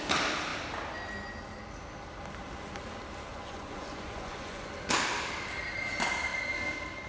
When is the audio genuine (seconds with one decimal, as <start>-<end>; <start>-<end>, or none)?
0.0-3.3; 4.7-7.1